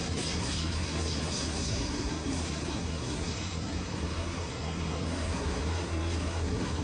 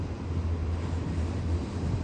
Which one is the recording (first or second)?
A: second